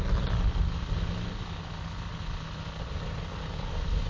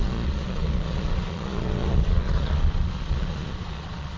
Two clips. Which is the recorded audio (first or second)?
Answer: first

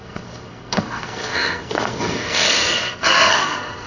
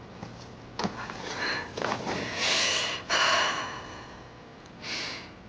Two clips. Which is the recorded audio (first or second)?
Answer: second